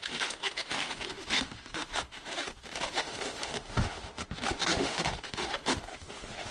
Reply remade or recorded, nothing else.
remade